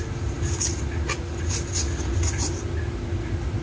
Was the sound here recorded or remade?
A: recorded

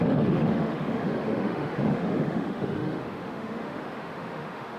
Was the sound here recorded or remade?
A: remade